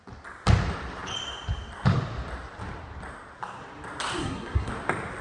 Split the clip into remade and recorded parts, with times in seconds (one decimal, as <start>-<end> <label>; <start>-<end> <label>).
0.0-4.2 recorded; 4.2-4.7 remade; 4.7-5.2 recorded